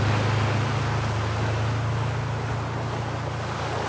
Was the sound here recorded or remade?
recorded